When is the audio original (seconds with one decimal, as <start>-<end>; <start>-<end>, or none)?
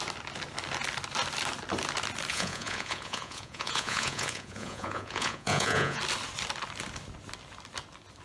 0.0-2.3; 6.0-8.2